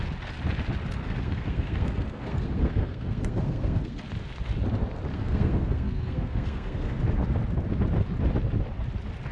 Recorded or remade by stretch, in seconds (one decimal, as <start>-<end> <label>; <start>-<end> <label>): 0.0-1.0 recorded; 1.0-4.0 remade; 4.0-5.1 recorded; 5.1-7.0 remade; 7.0-9.3 recorded